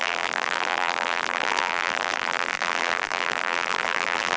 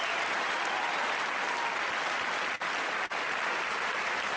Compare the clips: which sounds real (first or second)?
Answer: second